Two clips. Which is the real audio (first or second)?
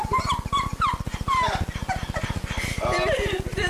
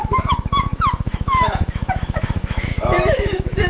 first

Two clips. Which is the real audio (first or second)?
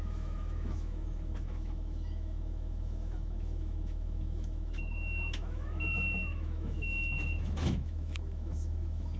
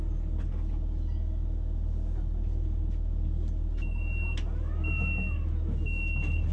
second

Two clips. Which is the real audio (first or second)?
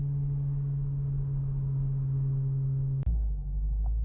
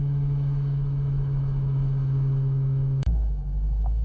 first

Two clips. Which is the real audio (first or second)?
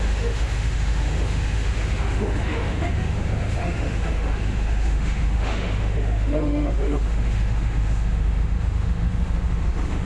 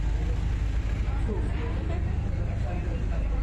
second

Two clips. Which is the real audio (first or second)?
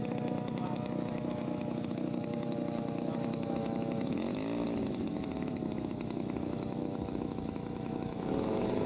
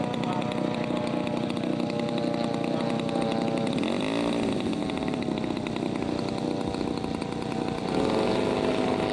second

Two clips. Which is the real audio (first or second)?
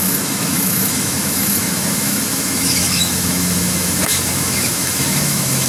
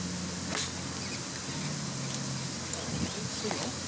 second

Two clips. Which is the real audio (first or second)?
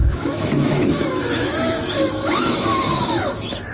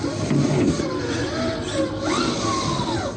second